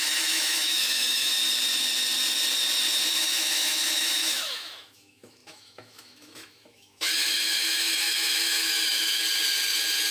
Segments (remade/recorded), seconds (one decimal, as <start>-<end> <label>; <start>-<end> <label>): 0.0-1.3 remade; 1.3-3.1 recorded; 3.1-9.2 remade; 9.2-10.1 recorded